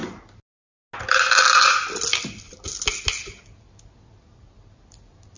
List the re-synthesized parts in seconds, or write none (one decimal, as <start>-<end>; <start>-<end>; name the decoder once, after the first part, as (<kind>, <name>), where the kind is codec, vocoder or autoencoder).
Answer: none